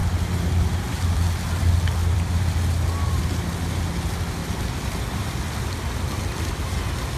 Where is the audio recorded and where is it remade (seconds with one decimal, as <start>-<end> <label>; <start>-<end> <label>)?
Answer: 0.0-2.0 recorded; 2.0-3.2 remade; 3.2-4.4 recorded; 4.4-5.8 remade; 5.8-7.2 recorded